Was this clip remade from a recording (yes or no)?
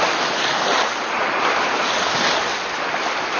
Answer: no